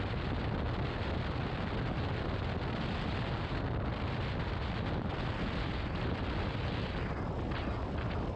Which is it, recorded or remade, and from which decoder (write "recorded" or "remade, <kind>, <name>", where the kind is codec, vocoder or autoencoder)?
recorded